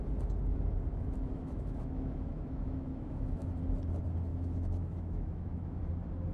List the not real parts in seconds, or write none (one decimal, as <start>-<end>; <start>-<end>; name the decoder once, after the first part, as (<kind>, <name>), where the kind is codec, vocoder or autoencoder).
0.9-3.5 (autoencoder, DAC-VAE); 4.3-5.8